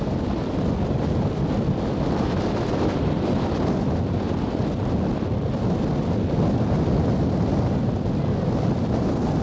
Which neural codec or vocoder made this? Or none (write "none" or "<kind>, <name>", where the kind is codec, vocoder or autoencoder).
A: none